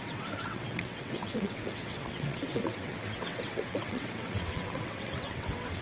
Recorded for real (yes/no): no